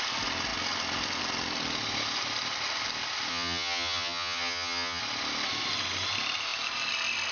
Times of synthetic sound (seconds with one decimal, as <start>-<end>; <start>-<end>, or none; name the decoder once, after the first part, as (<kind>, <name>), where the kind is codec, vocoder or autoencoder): 3.3-5.0 (vocoder, HiFi-GAN)